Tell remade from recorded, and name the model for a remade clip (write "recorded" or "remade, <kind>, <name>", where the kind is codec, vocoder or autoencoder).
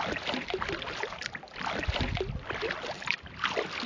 recorded